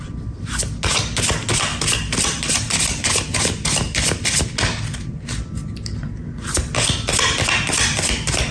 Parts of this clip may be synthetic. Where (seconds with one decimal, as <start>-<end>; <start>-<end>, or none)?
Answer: 1.7-4.4